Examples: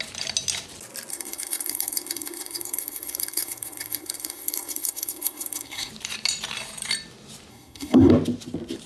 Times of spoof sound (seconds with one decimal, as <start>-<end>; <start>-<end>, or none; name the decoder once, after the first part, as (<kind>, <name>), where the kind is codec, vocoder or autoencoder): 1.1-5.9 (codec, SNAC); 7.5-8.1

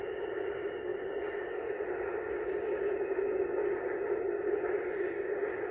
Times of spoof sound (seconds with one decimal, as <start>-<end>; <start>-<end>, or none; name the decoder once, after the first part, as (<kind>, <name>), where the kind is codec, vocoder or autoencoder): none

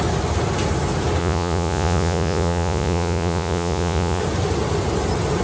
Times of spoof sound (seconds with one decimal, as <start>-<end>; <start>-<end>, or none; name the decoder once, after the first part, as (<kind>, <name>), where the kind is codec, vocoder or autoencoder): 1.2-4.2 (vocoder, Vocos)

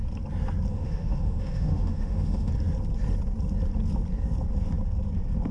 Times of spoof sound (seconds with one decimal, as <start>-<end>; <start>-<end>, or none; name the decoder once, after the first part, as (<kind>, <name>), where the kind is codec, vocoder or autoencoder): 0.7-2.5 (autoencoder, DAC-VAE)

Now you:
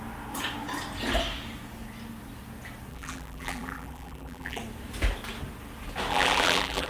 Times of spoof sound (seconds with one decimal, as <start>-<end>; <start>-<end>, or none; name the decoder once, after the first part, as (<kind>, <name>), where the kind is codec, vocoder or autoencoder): 2.9-4.6 (vocoder, BigVGAN v2); 6.1-6.9